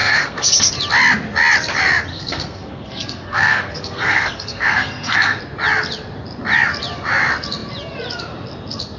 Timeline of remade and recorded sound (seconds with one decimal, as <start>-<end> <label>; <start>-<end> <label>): 0.0-0.7 remade; 0.7-2.1 recorded; 2.1-5.4 remade; 5.4-9.0 recorded